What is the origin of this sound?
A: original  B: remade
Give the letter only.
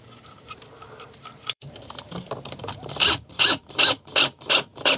B